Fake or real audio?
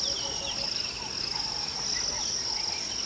real